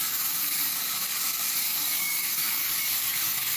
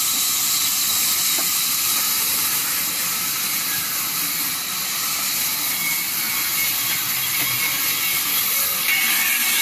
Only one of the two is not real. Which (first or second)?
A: first